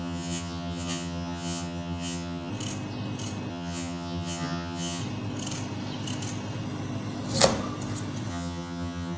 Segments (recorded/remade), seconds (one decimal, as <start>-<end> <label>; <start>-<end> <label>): 0.0-2.5 remade; 2.5-3.5 recorded; 3.5-5.0 remade; 5.0-8.3 recorded; 8.3-9.2 remade